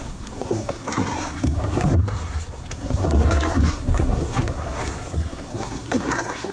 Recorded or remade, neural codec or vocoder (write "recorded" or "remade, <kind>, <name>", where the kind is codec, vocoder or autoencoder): remade, codec, SNAC